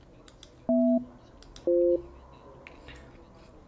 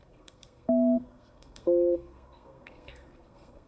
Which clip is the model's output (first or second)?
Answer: second